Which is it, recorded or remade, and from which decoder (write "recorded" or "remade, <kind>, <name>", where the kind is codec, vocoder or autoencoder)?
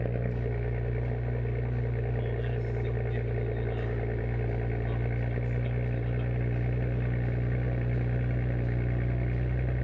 recorded